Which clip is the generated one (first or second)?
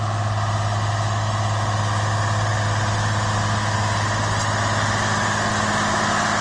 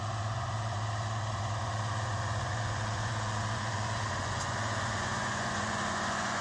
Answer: second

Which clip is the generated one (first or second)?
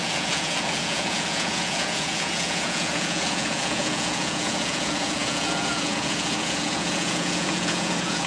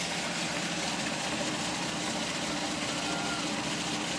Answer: first